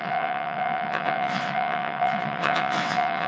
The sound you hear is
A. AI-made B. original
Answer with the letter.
A